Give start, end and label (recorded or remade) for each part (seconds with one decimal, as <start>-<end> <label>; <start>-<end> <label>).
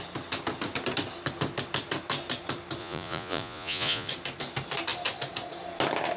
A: 0.0-2.8 recorded; 2.8-4.1 remade; 4.1-6.2 recorded